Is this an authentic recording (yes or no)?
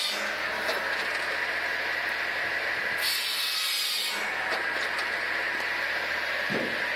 yes